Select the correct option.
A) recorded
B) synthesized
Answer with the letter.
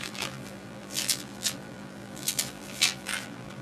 B